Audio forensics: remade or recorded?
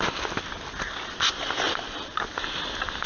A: recorded